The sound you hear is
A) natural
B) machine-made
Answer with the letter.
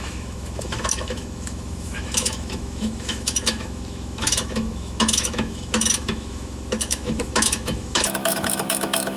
B